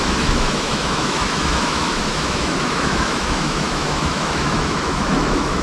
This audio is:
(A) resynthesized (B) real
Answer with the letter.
A